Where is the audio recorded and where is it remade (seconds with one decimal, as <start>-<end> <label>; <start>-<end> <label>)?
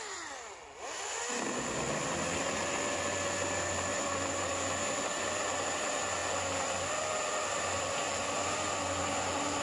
0.0-9.6 recorded